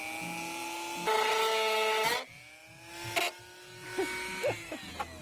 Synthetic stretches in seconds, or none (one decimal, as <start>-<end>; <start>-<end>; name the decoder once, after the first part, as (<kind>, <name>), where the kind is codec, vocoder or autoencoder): 2.6-3.4 (vocoder, BigVGAN v2)